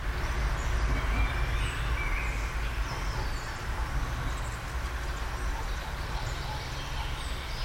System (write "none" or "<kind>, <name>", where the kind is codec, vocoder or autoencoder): none